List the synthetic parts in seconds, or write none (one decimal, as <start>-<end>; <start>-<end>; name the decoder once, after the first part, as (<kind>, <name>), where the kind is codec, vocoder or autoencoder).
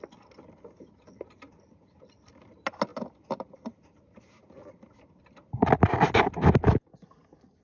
none